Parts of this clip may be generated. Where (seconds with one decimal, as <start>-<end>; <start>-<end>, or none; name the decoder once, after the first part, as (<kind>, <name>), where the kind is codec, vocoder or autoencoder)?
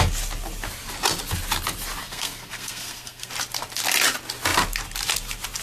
2.0-3.3 (codec, SNAC)